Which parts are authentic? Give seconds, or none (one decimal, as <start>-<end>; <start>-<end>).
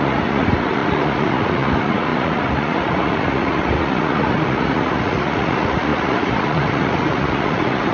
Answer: none